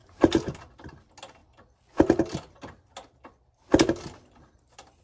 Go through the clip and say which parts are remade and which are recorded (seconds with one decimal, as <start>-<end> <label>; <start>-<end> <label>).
0.0-5.0 recorded